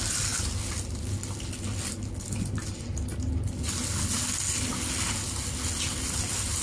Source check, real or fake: real